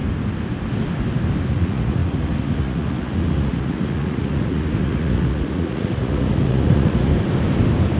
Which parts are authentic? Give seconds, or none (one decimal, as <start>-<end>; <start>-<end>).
0.0-1.5; 7.1-8.0